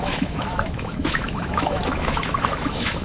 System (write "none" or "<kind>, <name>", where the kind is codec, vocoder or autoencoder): autoencoder, DAC-VAE